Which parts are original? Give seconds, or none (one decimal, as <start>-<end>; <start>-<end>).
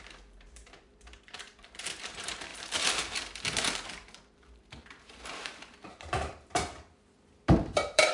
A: none